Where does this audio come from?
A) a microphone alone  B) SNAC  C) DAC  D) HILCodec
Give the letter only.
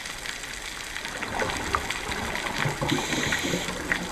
A